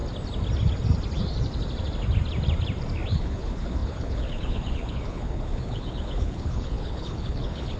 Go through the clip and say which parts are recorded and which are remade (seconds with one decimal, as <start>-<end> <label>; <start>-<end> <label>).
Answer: 0.0-3.1 recorded; 3.1-7.8 remade